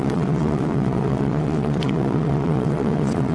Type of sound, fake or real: fake